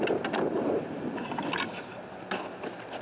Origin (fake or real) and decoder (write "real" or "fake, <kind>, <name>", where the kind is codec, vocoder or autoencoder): real